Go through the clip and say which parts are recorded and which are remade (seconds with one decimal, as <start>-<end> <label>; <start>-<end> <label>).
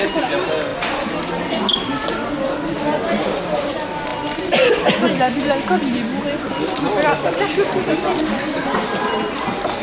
0.0-9.8 recorded